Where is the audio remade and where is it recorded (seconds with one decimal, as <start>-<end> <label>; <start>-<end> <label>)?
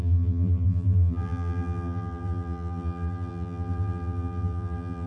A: 0.0-5.1 remade